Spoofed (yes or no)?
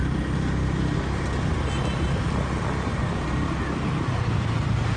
no